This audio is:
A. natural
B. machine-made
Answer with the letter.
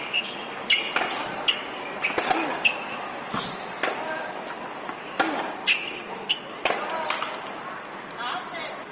A